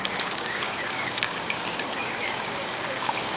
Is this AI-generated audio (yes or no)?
yes